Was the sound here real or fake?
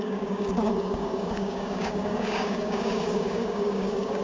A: fake